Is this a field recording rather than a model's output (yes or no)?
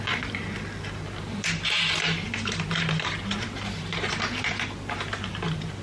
yes